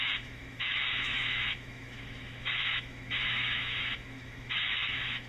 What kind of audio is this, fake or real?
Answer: fake